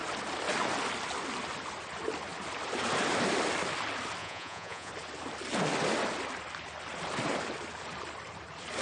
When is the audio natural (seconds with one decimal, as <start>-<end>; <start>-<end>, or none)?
0.0-4.2; 4.9-8.8